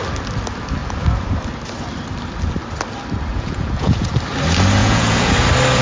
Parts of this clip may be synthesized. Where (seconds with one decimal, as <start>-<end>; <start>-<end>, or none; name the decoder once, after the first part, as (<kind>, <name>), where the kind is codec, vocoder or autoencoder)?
3.3-4.1 (vocoder, Vocos); 4.8-5.3